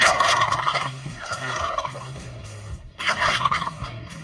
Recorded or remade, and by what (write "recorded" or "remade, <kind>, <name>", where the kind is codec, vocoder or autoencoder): remade, codec, SNAC